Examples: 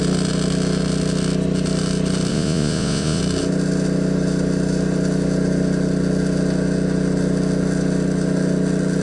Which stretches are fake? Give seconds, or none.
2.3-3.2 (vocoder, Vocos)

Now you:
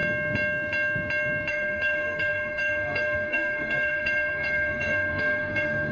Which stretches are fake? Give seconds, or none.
1.5-5.9 (codec, SNAC)

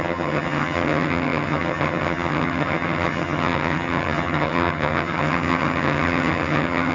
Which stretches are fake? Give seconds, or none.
0.0-6.9 (vocoder, HiFi-GAN)

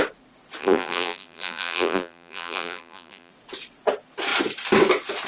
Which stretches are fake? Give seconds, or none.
0.6-3.3 (vocoder, BigVGAN v2)